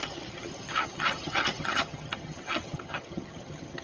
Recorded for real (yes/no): no